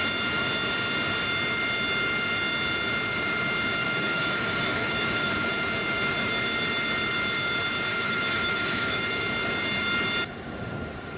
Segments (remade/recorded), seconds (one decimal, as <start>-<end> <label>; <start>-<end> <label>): 0.0-3.8 recorded; 3.8-5.5 remade; 5.5-7.9 recorded; 7.9-9.0 remade; 9.0-11.2 recorded